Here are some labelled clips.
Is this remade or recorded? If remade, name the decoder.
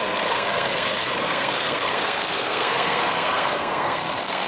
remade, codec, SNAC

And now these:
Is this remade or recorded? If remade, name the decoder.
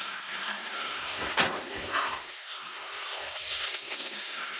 remade, codec, SNAC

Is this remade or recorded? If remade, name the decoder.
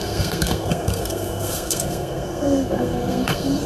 remade, codec, SNAC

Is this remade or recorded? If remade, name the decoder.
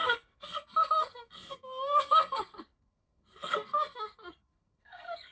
remade, codec, SNAC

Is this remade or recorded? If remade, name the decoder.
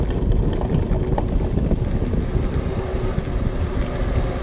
recorded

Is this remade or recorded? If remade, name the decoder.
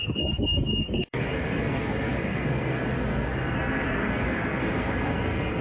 remade, codec, SNAC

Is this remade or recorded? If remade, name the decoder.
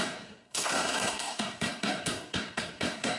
remade, codec, SNAC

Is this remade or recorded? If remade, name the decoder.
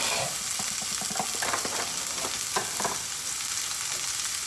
recorded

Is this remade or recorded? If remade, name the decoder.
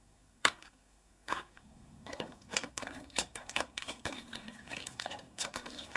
remade, codec, SNAC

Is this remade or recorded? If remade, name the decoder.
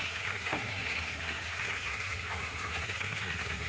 remade, codec, SNAC